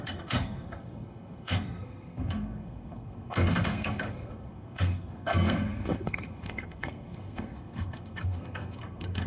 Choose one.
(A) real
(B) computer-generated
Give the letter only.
B